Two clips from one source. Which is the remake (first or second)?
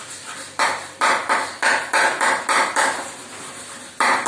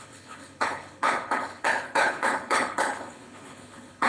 second